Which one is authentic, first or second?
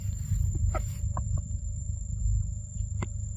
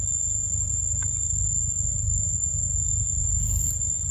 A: second